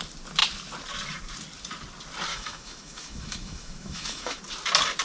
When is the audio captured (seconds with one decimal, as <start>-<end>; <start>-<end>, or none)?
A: 0.0-2.3; 4.4-5.0